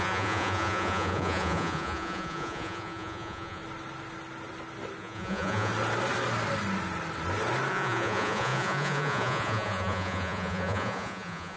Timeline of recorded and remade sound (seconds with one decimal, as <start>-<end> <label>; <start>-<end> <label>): 0.0-3.6 remade; 3.6-5.0 recorded; 5.0-5.7 remade; 5.7-7.7 recorded; 7.7-11.6 remade